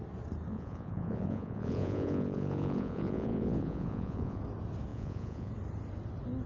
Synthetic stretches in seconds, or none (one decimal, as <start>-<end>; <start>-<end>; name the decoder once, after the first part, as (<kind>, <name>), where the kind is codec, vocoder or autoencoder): 0.5-4.4 (vocoder, Vocos); 4.9-5.5